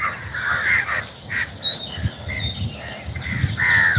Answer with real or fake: real